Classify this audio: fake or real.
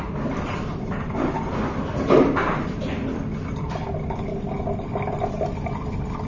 real